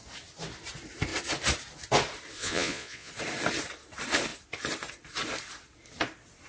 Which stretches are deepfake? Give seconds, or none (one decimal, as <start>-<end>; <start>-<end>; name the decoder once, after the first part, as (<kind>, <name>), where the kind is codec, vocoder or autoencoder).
2.4-3.1 (vocoder, Vocos)